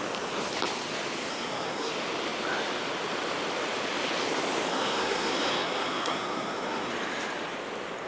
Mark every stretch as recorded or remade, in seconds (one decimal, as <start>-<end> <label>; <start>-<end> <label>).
0.0-1.3 recorded; 1.3-1.9 remade; 1.9-4.7 recorded; 4.7-6.9 remade; 6.9-8.1 recorded